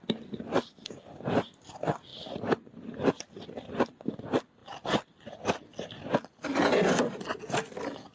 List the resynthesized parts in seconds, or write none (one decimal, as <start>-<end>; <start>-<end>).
none